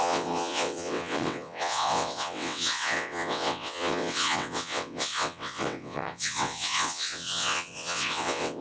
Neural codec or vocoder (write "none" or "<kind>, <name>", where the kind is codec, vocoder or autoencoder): vocoder, WaveNeXt